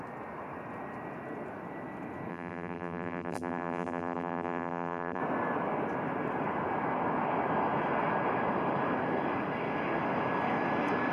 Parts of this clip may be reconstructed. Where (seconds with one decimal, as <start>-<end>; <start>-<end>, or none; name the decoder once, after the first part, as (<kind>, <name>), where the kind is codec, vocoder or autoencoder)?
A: 2.3-5.2 (vocoder, BigVGAN v2)